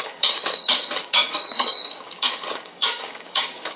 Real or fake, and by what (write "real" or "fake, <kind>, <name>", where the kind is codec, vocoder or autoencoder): fake, codec, DAC